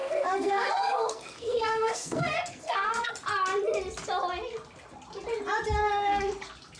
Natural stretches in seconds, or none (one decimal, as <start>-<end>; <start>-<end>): 3.1-5.8; 6.3-6.8